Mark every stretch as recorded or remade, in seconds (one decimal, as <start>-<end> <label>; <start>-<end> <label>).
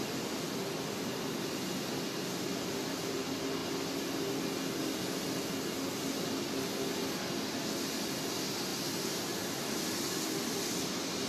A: 0.0-11.3 recorded